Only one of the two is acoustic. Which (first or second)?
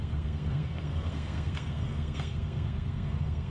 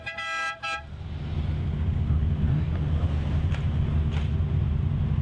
second